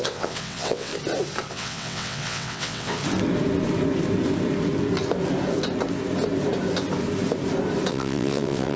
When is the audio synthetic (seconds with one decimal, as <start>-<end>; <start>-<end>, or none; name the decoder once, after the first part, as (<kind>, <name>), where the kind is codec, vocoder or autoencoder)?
0.0-0.9 (vocoder, WaveNeXt); 1.5-3.0; 7.9-8.8